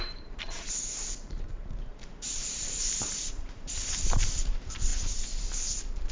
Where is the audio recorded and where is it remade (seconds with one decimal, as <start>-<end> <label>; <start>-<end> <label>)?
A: 0.0-4.9 remade; 4.9-6.1 recorded